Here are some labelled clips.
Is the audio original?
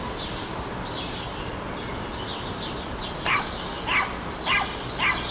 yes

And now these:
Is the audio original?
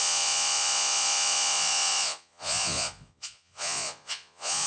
no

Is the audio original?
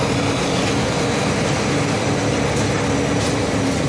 yes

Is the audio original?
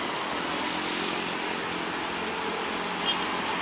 yes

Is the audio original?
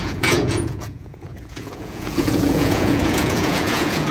no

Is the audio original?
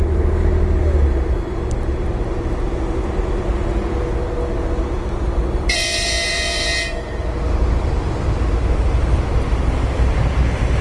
yes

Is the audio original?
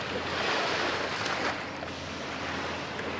yes